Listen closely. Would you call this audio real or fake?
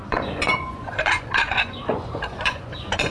fake